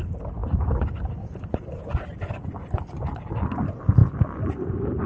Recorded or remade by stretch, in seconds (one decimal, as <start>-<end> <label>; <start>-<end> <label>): 0.0-5.1 recorded